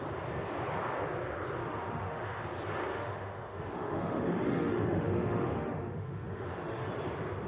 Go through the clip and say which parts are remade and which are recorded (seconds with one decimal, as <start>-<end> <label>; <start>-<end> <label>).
0.0-1.6 recorded; 1.6-2.4 remade; 2.4-2.9 recorded; 2.9-6.9 remade; 6.9-7.5 recorded